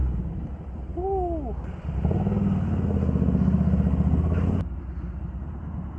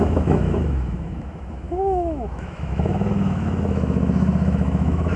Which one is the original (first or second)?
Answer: first